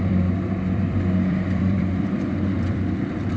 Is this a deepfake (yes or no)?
yes